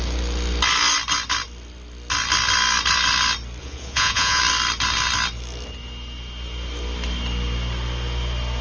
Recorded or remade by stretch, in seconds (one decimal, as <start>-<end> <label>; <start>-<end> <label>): 0.0-3.6 recorded; 3.6-4.4 remade; 4.4-8.6 recorded